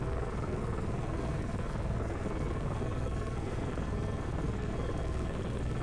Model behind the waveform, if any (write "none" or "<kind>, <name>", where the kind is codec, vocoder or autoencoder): codec, SNAC